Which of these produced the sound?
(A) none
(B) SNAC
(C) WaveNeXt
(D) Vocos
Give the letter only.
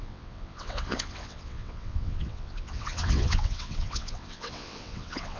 C